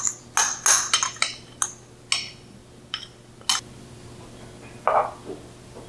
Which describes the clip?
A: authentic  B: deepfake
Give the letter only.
A